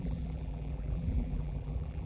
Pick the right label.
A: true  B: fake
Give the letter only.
B